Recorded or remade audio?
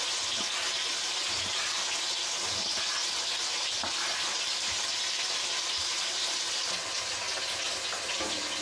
recorded